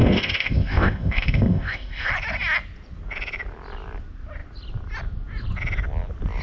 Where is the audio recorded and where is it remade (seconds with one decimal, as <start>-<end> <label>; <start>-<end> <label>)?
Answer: 0.0-2.1 remade; 2.1-6.4 recorded